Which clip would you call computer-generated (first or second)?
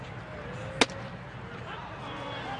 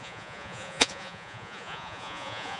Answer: second